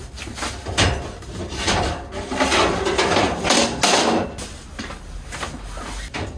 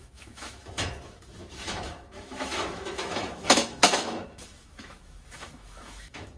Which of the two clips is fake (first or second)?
second